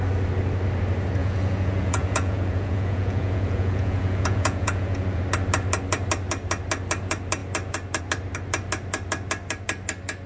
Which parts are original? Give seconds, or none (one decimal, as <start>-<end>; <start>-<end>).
0.0-1.2; 5.2-10.3